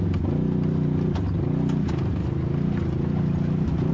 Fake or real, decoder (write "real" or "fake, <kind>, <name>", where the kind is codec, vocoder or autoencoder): real